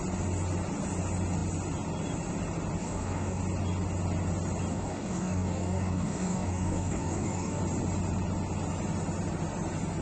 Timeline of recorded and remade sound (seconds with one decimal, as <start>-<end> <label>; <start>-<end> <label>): 0.0-2.8 recorded; 2.8-3.4 remade; 3.4-4.7 recorded; 4.7-7.6 remade; 7.6-10.0 recorded